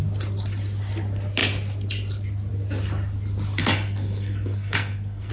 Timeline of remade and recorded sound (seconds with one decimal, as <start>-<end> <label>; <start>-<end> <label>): 0.0-3.6 recorded; 3.6-5.3 remade